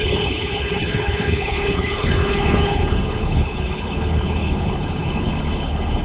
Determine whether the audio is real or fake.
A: fake